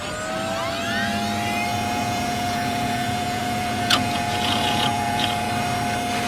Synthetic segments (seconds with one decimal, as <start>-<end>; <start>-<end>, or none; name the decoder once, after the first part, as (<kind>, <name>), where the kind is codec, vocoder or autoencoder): 1.7-5.5 (vocoder, Vocos)